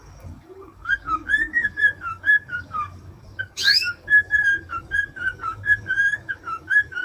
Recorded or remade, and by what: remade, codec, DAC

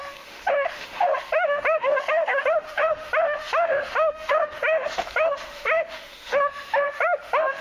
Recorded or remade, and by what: remade, autoencoder, DAC-VAE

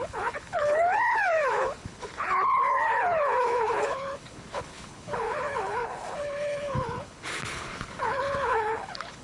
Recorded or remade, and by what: remade, codec, HILCodec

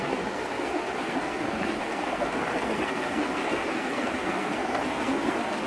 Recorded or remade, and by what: remade, codec, SNAC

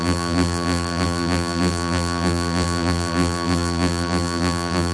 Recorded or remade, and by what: remade, vocoder, BigVGAN v2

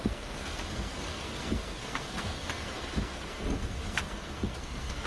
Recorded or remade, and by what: remade, codec, SNAC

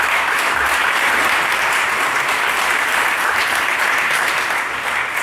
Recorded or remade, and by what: remade, vocoder, BigVGAN v2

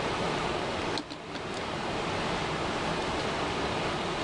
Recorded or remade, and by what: recorded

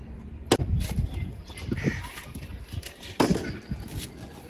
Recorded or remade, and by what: recorded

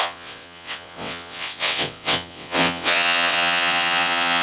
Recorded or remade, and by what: remade, vocoder, WaveNeXt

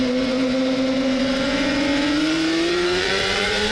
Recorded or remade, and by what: remade, vocoder, Vocos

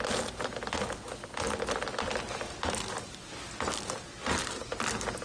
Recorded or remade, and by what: recorded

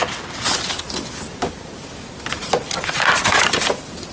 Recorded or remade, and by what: recorded